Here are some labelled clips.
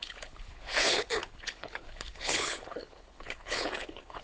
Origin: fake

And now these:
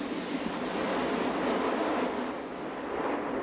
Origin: real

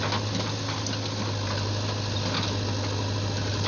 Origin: real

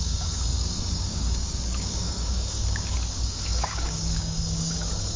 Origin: fake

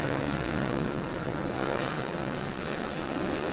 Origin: fake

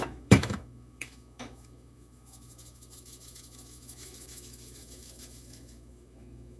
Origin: fake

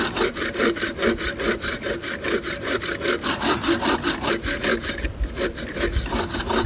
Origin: real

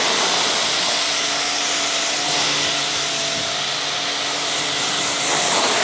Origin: real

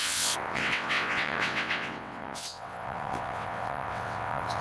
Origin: fake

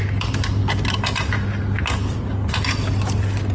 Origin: real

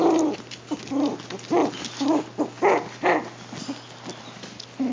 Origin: real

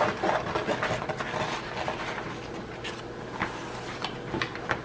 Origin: real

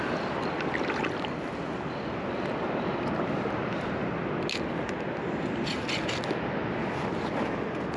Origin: real